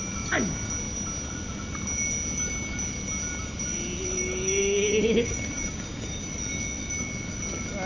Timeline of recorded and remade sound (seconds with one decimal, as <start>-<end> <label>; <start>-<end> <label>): 0.0-4.2 recorded; 4.2-6.2 remade; 6.2-7.9 recorded